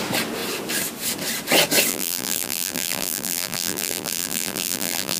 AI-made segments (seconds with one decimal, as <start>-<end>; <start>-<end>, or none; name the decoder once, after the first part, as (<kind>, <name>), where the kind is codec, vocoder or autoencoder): 1.9-5.2 (vocoder, BigVGAN v2)